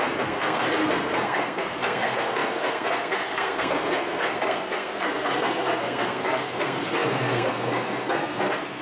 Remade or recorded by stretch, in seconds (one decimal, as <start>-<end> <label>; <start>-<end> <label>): 0.0-8.8 remade